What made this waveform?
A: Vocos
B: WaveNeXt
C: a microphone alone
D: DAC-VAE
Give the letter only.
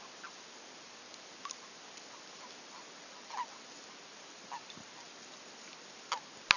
C